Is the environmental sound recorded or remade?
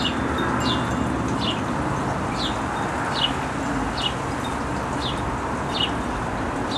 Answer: recorded